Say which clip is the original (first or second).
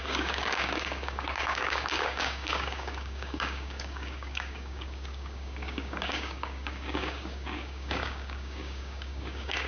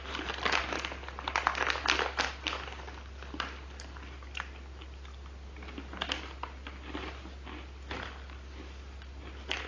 second